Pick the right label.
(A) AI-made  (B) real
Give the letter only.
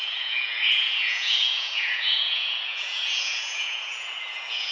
A